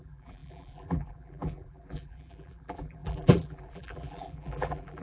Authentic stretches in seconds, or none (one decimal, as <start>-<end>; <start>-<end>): none